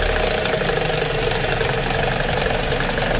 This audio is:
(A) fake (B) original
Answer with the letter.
B